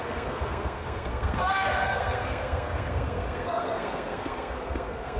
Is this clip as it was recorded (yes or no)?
no